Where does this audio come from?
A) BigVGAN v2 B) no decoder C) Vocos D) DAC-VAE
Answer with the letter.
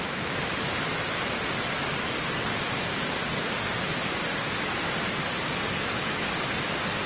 B